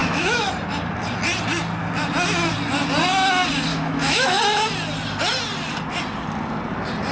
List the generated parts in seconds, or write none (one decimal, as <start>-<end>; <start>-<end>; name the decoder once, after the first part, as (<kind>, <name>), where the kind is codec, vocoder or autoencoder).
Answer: 0.0-0.5 (autoencoder, DAC-VAE); 3.7-4.4